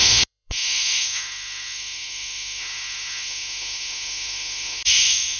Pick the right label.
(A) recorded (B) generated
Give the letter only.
B